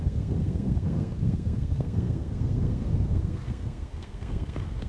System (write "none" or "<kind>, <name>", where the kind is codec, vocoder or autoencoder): codec, SNAC